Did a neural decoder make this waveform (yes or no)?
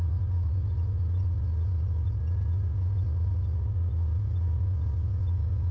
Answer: no